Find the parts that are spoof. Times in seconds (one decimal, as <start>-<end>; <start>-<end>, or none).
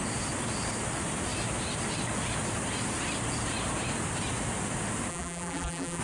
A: 5.1-6.0